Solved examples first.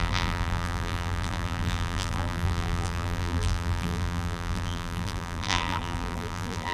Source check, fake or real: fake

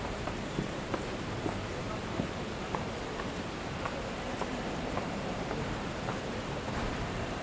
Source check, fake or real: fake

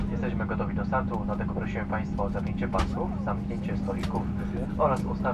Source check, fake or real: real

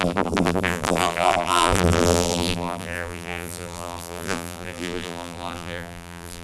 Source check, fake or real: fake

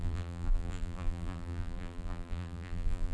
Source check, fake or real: fake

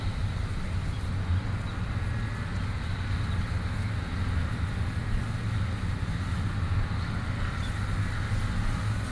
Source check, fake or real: real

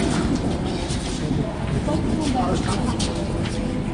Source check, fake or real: real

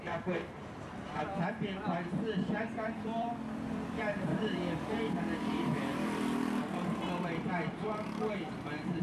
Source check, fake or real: fake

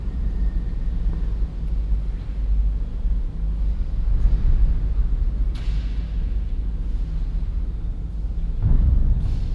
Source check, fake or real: real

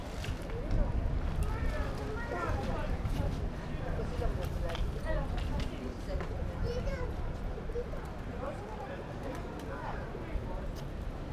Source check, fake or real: fake